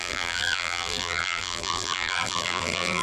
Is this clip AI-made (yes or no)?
yes